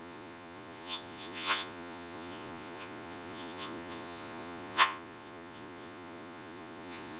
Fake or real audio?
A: fake